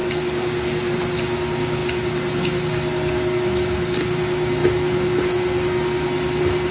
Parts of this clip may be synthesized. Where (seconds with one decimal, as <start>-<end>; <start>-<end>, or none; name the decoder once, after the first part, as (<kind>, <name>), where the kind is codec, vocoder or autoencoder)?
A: none